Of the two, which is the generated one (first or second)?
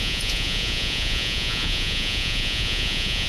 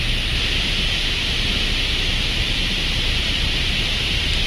first